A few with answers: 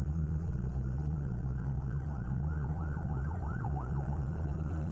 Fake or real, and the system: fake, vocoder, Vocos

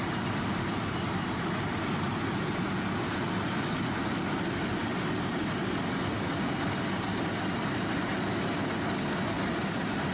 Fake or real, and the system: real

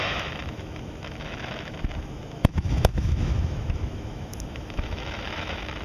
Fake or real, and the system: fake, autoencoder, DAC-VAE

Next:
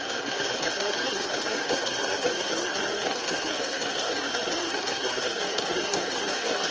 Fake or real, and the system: fake, codec, SNAC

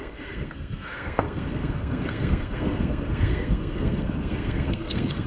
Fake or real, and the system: fake, codec, SNAC